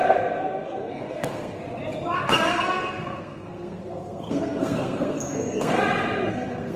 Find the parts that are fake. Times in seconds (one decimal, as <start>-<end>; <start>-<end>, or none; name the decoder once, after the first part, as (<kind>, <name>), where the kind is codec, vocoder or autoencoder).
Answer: 0.0-1.6 (codec, SNAC); 2.5-5.8; 6.3-6.8